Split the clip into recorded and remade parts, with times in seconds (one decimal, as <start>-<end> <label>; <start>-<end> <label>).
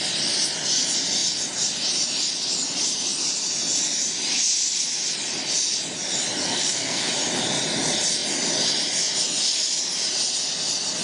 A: 0.0-6.4 recorded; 6.4-7.1 remade; 7.1-11.0 recorded